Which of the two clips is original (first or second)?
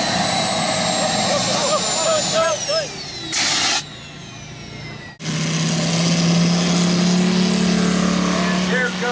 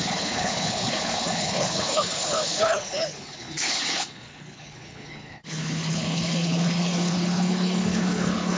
first